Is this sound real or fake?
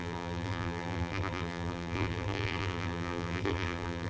fake